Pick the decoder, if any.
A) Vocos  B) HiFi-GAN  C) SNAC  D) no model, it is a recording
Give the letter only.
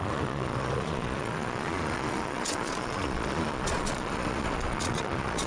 A